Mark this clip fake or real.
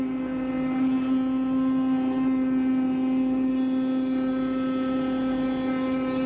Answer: real